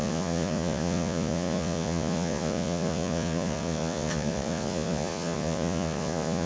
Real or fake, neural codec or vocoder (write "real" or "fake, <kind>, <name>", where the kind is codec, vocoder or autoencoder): fake, vocoder, Vocos